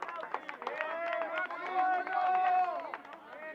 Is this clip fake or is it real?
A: real